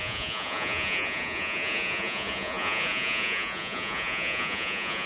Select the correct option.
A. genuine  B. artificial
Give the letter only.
B